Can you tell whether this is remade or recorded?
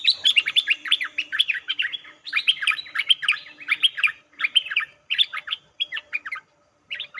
remade